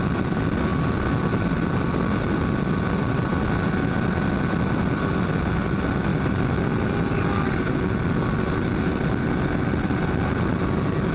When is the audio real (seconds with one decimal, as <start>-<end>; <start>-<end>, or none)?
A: 0.0-11.1